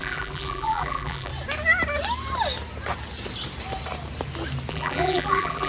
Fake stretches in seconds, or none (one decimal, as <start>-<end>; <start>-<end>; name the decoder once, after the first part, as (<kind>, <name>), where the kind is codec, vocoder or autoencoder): 0.0-1.3 (vocoder, BigVGAN v2); 4.7-5.7